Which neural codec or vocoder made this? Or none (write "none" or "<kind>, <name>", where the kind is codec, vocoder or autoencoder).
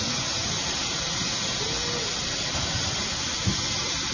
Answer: none